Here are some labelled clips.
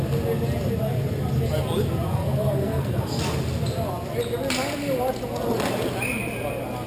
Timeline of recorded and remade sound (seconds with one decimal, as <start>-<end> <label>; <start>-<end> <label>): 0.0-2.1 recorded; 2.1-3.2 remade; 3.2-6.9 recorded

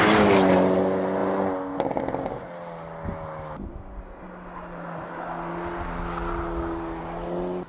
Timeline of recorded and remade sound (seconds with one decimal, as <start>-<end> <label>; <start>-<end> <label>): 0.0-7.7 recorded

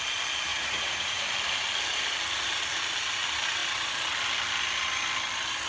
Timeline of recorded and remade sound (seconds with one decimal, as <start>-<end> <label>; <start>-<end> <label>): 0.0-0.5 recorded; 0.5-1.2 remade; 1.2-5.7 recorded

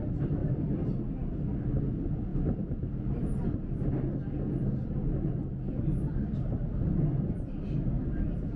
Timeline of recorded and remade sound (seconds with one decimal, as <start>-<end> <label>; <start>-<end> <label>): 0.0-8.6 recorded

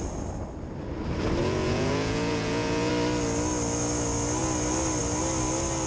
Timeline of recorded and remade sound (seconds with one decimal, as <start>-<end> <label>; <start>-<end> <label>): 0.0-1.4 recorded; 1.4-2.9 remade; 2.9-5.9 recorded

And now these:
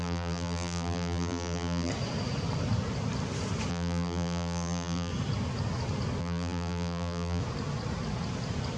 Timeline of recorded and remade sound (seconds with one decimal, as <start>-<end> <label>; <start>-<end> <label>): 0.0-1.9 remade; 1.9-3.7 recorded; 3.7-5.1 remade; 5.1-6.2 recorded; 6.2-7.4 remade; 7.4-8.8 recorded